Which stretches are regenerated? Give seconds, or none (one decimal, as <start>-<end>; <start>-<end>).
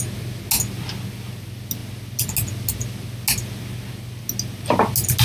none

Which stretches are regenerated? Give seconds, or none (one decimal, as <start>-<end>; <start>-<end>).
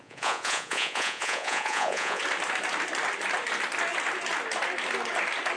0.0-2.2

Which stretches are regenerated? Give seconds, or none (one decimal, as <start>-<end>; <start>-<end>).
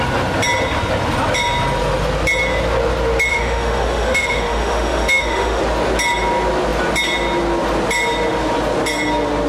3.3-5.6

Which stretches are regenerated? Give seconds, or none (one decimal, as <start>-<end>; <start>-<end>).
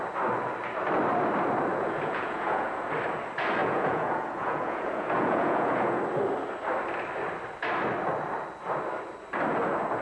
1.7-2.9; 3.6-6.0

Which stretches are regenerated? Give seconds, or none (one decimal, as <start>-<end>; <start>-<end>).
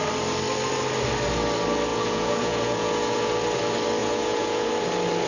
1.9-3.3; 4.0-4.7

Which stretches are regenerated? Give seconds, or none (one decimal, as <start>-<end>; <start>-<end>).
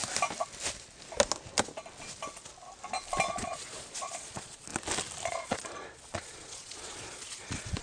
3.3-4.7; 5.3-7.8